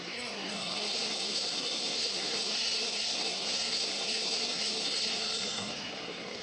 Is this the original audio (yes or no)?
no